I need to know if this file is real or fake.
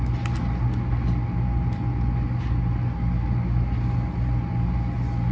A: real